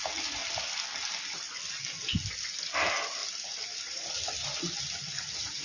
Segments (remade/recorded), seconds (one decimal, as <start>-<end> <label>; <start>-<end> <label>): 0.0-0.4 recorded; 0.4-1.7 remade; 1.7-3.2 recorded; 3.2-4.8 remade; 4.8-5.6 recorded